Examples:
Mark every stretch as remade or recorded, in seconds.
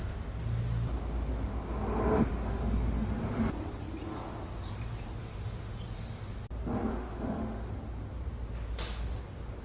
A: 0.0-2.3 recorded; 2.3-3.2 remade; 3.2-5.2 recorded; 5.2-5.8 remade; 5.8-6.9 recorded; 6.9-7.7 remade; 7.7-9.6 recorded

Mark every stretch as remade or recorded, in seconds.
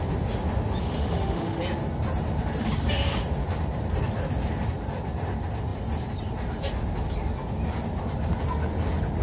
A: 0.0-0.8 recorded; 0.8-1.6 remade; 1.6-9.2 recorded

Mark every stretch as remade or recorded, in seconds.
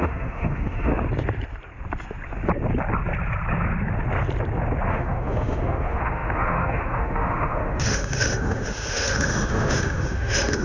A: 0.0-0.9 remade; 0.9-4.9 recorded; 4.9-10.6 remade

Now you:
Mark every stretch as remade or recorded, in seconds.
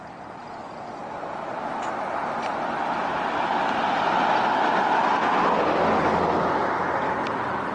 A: 0.0-7.7 recorded